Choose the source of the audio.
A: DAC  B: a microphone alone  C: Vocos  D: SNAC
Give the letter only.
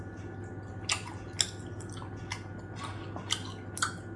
B